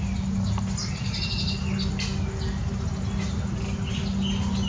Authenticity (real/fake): real